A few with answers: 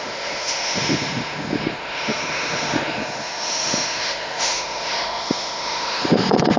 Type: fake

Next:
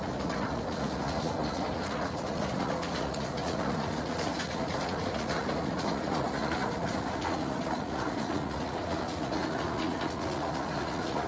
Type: fake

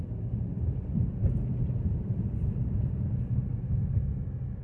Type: real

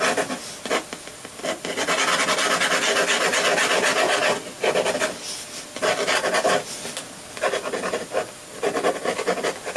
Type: real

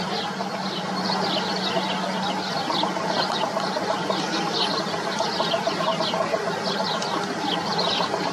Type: real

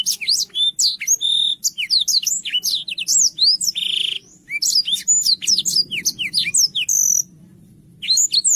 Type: real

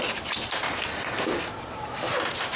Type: real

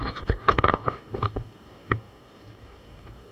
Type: fake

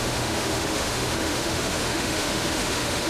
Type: fake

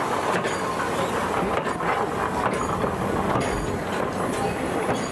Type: real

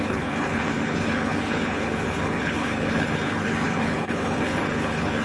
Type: fake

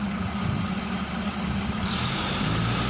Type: real